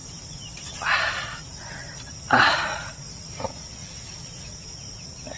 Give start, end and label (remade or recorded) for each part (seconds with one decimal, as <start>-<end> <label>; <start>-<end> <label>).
0.0-3.2 remade; 3.2-3.8 recorded; 3.8-4.4 remade; 4.4-5.4 recorded